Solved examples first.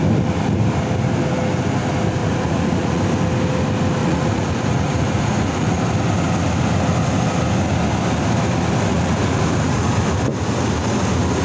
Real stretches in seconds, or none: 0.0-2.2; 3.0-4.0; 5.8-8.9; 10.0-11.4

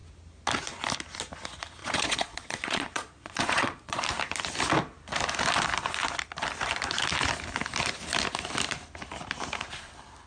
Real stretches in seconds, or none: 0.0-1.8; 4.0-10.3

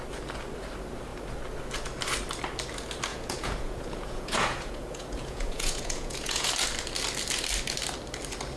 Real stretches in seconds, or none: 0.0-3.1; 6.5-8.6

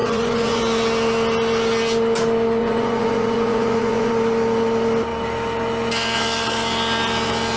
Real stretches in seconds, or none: 0.6-2.6; 4.1-7.6

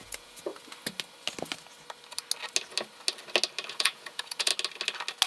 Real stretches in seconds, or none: 0.5-3.7; 4.5-5.3

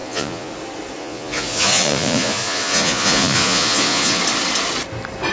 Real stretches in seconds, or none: 0.5-1.0; 4.2-5.3